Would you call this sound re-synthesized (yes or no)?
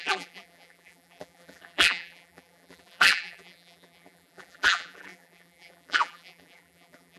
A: yes